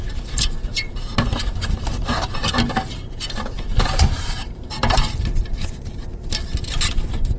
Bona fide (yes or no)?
no